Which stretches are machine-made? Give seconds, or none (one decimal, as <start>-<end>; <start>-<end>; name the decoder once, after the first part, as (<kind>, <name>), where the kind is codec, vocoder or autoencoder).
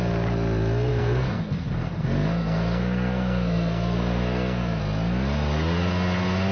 0.9-4.8 (codec, SNAC)